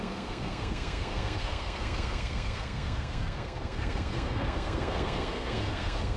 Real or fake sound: fake